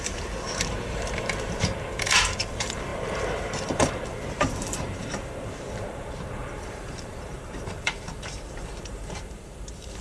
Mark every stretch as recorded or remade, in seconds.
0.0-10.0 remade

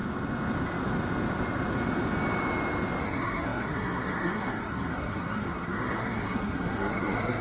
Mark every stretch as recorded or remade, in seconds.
0.0-3.0 recorded; 3.0-7.4 remade

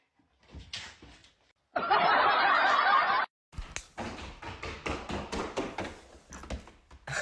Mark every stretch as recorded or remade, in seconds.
0.0-1.2 recorded; 1.2-3.2 remade; 3.2-5.4 recorded; 5.4-5.9 remade; 5.9-7.2 recorded